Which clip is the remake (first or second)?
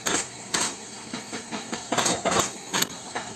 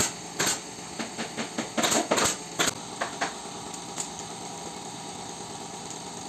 first